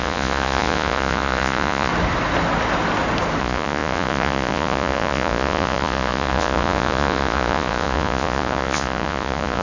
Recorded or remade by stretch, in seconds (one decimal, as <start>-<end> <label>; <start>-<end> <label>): 0.0-1.9 remade; 1.9-3.4 recorded; 3.4-9.6 remade